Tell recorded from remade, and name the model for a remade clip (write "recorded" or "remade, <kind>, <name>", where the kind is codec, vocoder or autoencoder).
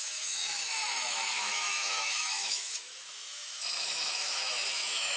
remade, autoencoder, DAC-VAE